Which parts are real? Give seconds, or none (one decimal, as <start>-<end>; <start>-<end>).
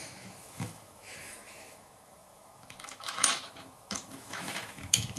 none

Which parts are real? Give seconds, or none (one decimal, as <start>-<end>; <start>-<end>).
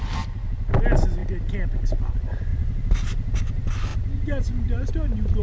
0.0-5.4